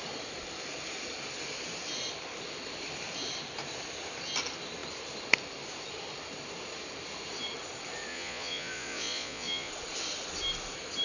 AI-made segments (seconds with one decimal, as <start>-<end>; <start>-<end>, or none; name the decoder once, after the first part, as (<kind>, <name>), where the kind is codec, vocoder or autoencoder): 8.1-9.7 (vocoder, Vocos)